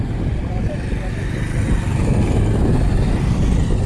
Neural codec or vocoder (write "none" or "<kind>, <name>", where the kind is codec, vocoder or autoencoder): none